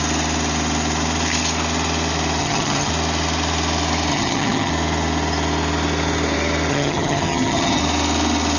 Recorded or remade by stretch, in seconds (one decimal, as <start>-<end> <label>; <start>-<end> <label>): 0.0-2.4 recorded; 2.4-2.9 remade; 2.9-4.1 recorded; 4.1-4.7 remade; 4.7-6.7 recorded; 6.7-7.8 remade; 7.8-8.6 recorded